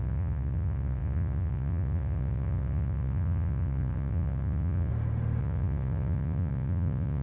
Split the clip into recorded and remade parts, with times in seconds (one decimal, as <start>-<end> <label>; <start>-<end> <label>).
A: 0.0-4.9 remade; 4.9-5.4 recorded; 5.4-7.2 remade